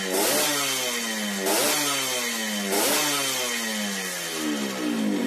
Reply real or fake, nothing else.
real